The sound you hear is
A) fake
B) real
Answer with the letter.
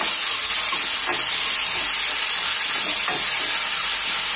B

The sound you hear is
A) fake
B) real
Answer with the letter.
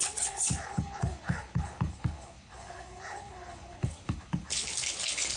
A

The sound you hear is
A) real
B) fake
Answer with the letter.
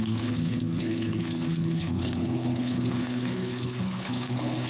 B